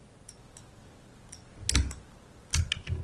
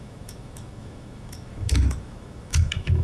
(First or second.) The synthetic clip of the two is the second